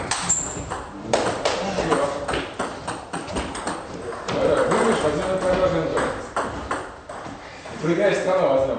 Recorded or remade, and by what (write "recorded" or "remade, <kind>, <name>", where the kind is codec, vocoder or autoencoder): recorded